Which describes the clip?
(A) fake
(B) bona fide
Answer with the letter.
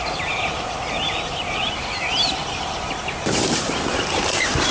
B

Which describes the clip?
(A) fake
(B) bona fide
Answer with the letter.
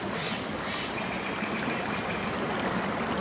B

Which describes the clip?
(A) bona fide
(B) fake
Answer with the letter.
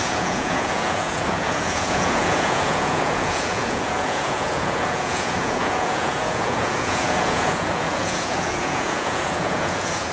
B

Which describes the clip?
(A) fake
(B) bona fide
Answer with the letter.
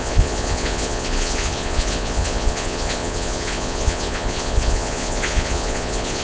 A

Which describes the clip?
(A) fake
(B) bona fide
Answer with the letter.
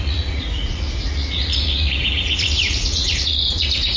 A